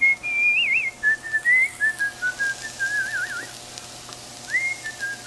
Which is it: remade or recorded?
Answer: recorded